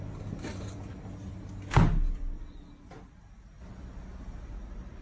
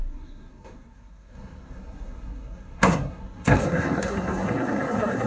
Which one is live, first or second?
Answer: first